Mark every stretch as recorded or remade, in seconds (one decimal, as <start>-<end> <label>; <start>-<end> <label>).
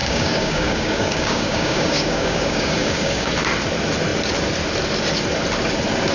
0.0-3.3 remade; 3.3-6.1 recorded